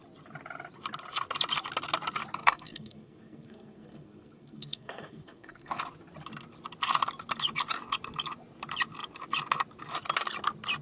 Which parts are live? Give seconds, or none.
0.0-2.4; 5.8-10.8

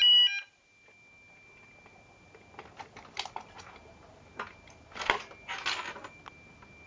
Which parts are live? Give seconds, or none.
0.0-6.9

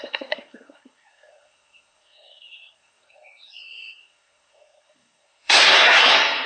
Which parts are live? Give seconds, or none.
none

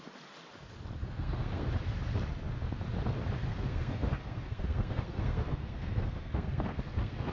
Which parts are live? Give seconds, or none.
0.0-1.0; 1.7-3.5

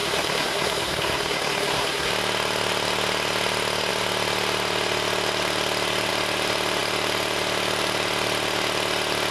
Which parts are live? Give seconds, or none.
2.1-9.3

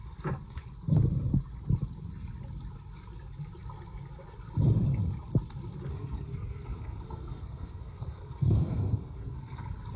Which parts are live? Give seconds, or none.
0.0-5.9; 9.6-10.0

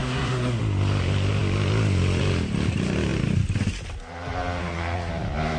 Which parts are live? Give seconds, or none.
0.6-4.6; 5.1-5.6